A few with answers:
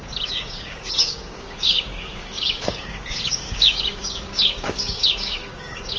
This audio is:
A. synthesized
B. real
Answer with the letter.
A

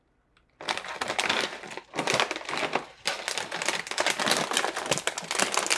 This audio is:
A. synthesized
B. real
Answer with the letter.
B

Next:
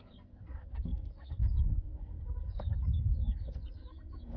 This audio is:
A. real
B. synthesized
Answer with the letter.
B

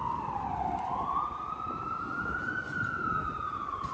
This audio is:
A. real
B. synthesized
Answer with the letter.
A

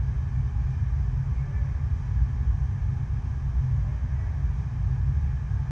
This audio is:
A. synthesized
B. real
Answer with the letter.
B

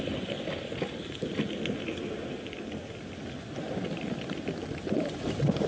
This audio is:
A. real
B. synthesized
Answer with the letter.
A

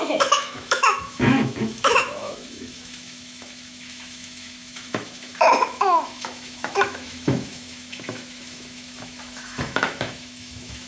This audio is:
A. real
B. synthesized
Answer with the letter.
B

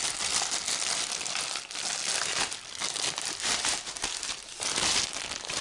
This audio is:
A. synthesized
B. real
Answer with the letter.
B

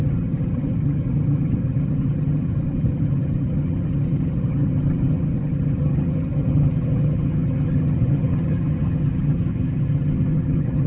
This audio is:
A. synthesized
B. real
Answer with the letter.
A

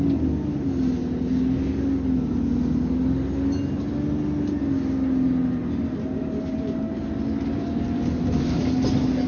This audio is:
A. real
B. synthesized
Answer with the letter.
A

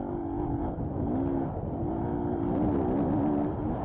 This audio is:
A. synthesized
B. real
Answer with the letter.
B